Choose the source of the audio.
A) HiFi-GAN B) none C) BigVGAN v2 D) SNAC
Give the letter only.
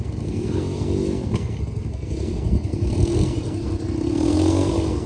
D